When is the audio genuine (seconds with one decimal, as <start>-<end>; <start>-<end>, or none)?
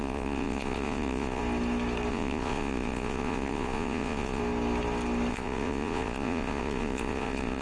1.4-2.1; 4.4-5.3